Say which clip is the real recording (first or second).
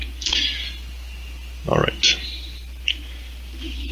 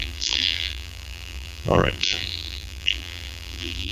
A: first